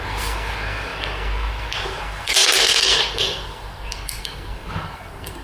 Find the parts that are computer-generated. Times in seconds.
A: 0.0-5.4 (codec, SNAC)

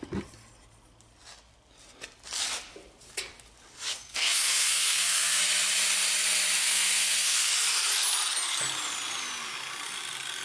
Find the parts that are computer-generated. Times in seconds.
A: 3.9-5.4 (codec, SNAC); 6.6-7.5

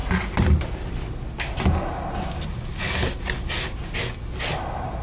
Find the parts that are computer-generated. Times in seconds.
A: none

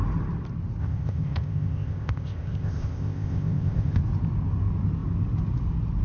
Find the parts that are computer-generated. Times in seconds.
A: 0.8-4.0 (codec, ZipCodec)

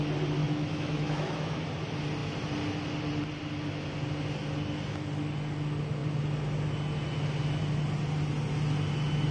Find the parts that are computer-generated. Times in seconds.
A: 0.4-1.6 (autoencoder, DAC-VAE)

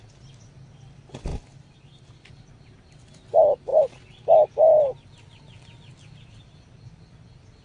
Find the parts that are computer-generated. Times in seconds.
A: none